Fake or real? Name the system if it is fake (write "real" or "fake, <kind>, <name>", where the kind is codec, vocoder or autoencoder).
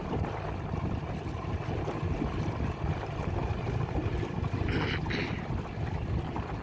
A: real